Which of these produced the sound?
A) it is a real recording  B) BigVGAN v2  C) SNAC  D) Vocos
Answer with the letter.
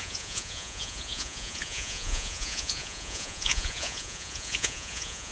D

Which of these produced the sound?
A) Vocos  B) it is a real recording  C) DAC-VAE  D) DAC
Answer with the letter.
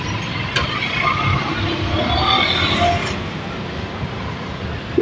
B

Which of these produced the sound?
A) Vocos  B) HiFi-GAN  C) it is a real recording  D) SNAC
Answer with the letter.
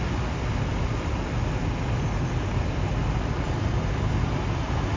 C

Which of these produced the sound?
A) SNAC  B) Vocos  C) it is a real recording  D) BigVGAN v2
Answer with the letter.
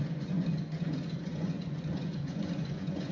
B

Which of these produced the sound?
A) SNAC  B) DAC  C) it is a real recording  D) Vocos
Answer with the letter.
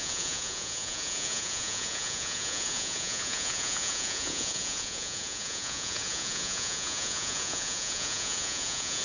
D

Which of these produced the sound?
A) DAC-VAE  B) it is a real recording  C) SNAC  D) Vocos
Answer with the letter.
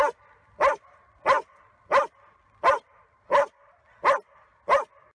B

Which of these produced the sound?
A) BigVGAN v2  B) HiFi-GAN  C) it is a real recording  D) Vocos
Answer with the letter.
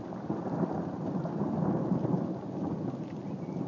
C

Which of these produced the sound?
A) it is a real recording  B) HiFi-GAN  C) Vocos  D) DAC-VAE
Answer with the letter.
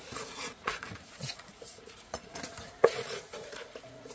C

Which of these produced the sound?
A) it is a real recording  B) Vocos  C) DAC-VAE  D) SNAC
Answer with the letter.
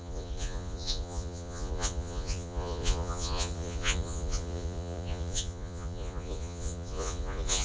B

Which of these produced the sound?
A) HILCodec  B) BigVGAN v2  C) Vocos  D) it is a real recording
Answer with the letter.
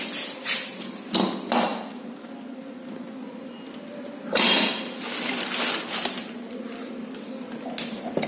D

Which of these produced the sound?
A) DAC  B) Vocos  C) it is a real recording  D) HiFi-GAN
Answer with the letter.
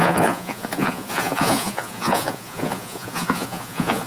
B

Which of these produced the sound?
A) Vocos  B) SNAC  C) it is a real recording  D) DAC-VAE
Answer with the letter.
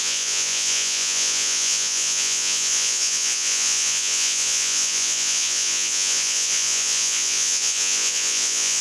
A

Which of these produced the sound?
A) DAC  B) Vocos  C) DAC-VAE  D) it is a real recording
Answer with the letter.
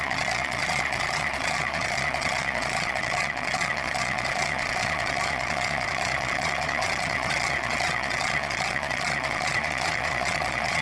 B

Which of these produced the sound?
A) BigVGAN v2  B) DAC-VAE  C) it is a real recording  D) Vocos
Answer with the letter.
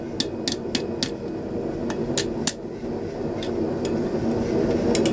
C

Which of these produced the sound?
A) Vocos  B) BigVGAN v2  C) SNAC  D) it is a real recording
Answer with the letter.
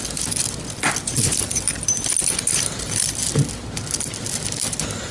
D